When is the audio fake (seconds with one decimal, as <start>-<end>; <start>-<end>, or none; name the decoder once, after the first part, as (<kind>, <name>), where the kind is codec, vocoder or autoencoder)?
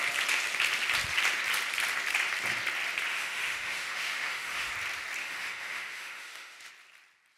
3.1-4.7 (autoencoder, DAC-VAE); 5.2-6.7